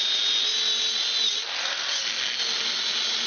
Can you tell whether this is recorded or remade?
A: recorded